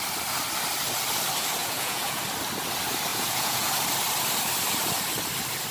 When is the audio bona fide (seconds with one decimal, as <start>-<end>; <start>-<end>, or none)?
0.0-1.6; 2.2-3.1; 3.7-5.7